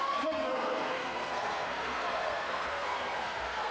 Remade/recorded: remade